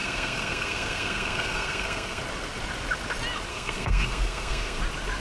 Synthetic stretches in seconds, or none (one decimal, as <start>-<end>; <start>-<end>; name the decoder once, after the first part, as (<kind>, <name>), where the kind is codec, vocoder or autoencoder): 0.0-2.2 (codec, SNAC); 3.5-4.8